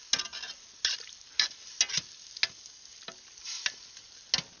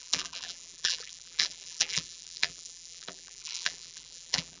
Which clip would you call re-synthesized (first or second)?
second